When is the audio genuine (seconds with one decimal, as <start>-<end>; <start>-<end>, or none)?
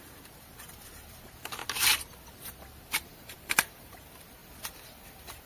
1.6-2.9; 4.4-5.0